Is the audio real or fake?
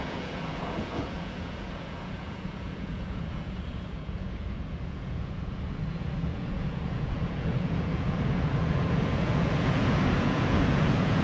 fake